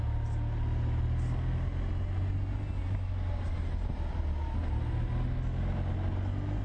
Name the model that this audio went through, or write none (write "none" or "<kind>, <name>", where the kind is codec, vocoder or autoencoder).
none